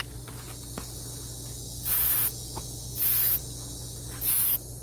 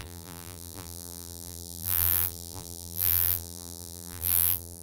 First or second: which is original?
first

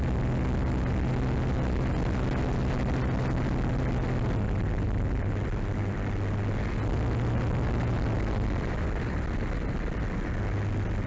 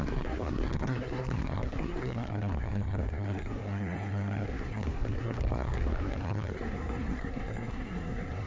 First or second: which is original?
first